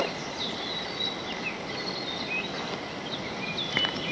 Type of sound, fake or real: real